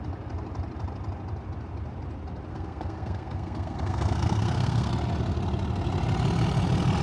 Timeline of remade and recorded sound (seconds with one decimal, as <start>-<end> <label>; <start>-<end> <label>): 0.0-2.5 recorded; 2.5-4.9 remade; 4.9-7.0 recorded